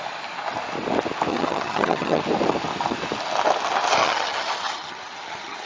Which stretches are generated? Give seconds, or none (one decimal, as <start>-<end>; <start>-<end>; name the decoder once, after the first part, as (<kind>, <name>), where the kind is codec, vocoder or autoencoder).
1.3-2.2 (vocoder, HiFi-GAN); 4.0-5.7